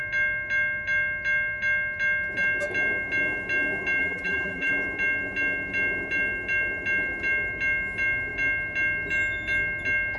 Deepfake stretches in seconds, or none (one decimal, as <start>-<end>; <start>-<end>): 4.0-4.7